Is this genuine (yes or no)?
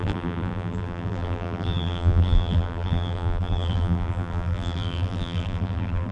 no